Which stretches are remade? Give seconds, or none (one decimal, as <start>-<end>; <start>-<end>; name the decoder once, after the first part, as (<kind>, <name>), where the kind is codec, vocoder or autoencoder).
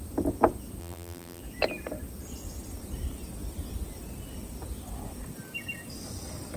0.8-1.4 (vocoder, BigVGAN v2)